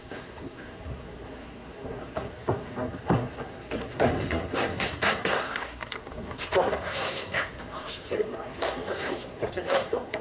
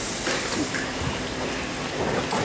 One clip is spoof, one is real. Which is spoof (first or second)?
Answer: first